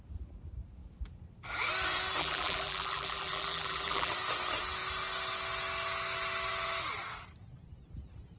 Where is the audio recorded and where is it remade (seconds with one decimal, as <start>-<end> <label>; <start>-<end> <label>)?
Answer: 0.0-2.2 recorded; 2.2-4.1 remade; 4.1-8.4 recorded